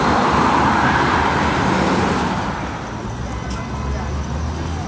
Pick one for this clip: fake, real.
real